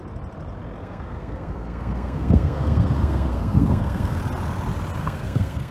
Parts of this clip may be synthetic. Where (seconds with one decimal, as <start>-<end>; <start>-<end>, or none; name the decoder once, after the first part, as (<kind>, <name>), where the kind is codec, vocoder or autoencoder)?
0.8-4.2 (codec, SNAC); 5.0-5.7